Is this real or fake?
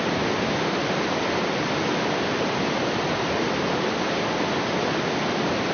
real